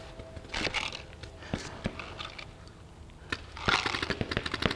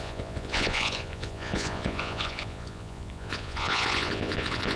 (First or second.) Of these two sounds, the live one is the first